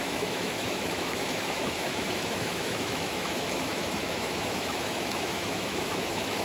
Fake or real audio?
fake